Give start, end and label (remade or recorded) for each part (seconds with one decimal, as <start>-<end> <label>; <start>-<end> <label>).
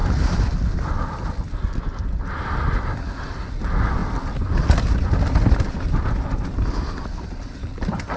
0.0-8.2 recorded